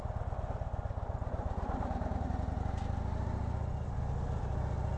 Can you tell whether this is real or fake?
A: real